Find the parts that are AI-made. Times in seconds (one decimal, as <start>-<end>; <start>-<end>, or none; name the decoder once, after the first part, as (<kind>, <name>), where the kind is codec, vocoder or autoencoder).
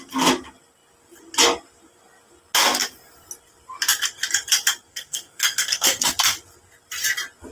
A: 4.9-6.1 (codec, SNAC)